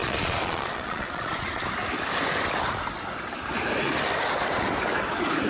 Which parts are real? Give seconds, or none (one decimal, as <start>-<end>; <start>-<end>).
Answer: 1.6-5.5